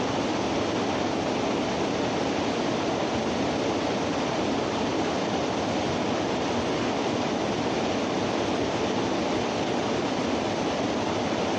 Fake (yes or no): no